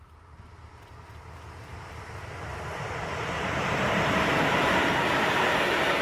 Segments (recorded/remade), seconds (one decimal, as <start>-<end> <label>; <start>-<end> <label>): 0.0-1.7 recorded; 1.7-2.5 remade; 2.5-6.0 recorded